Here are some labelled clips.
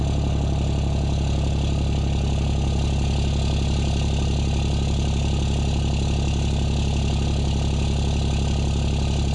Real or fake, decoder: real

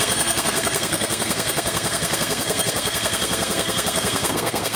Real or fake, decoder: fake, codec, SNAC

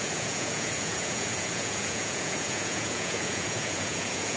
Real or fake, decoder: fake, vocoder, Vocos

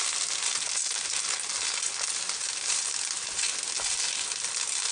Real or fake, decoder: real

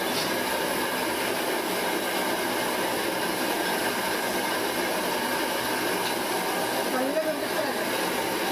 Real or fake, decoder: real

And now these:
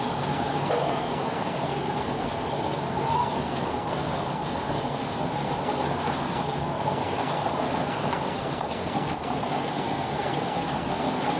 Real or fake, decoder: fake, codec, SNAC